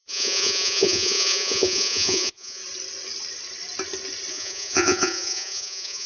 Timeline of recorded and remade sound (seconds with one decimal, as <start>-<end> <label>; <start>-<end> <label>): 0.0-2.6 remade; 2.6-4.3 recorded; 4.3-6.1 remade